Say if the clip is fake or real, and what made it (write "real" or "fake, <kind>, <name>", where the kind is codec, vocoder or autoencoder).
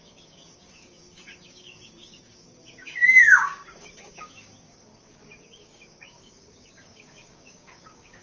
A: fake, codec, DAC